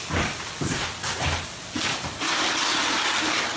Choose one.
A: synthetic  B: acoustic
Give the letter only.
B